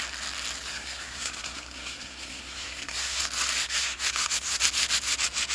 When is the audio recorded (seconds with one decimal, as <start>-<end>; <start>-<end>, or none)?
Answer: 0.0-0.7; 3.2-3.6; 4.6-5.5